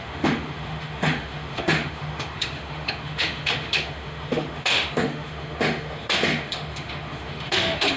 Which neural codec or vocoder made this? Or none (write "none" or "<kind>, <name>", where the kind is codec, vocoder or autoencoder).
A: autoencoder, DAC-VAE